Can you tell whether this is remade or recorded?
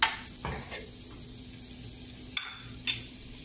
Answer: recorded